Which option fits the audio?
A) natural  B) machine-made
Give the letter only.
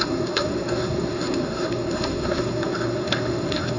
B